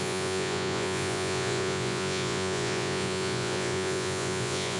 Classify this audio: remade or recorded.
remade